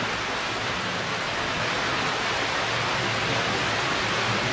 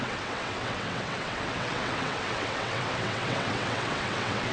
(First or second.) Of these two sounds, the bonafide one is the first